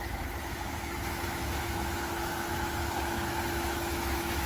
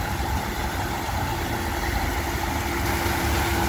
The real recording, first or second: second